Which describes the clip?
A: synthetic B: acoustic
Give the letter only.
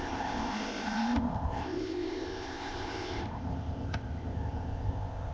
A